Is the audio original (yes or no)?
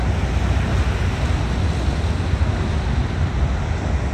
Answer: yes